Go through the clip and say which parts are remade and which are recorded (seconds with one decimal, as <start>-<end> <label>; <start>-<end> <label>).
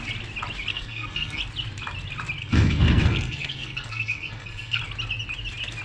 0.0-0.7 recorded; 0.7-1.4 remade; 1.4-2.4 recorded; 2.4-4.8 remade; 4.8-5.8 recorded